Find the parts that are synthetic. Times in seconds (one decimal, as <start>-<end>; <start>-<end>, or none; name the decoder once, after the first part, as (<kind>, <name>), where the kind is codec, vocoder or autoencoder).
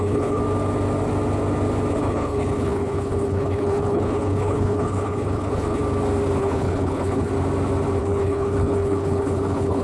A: 0.0-0.4 (codec, HILCodec); 1.9-5.8; 6.4-7.3; 8.0-9.8